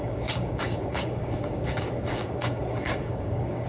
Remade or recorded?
remade